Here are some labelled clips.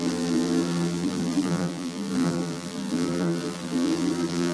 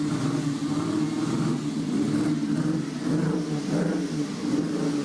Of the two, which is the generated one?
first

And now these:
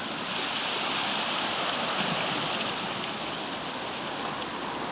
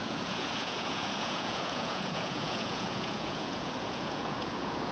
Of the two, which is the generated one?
second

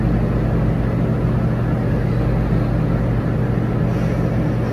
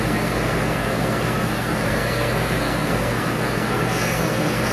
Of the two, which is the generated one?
second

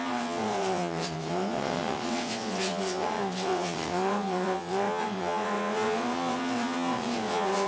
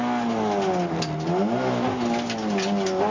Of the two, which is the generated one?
first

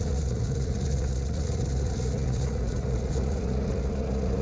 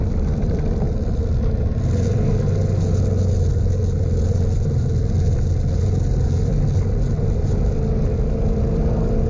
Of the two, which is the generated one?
first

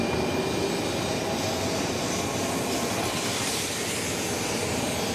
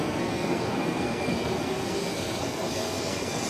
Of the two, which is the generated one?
second